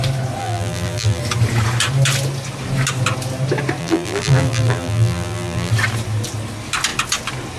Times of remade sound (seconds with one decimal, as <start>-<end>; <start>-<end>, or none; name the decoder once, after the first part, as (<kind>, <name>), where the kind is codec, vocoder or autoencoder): 0.4-1.2 (vocoder, BigVGAN v2); 3.8-5.7